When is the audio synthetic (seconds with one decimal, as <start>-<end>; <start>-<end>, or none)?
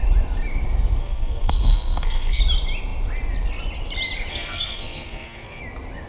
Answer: 1.0-2.4; 4.3-5.6